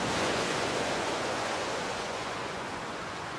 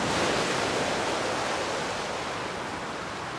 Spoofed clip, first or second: first